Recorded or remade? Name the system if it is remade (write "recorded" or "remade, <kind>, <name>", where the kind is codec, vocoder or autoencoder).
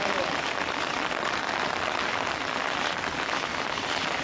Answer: recorded